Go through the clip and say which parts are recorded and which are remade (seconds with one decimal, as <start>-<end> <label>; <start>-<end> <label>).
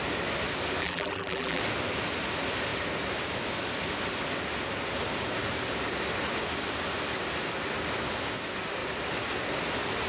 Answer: 0.0-0.8 recorded; 0.8-1.6 remade; 1.6-10.1 recorded